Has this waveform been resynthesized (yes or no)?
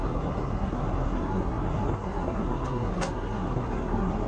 yes